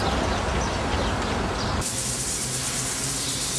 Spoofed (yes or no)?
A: no